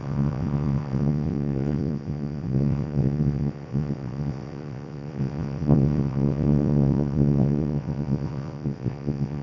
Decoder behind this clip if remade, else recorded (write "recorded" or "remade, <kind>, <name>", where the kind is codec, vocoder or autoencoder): remade, vocoder, WaveNeXt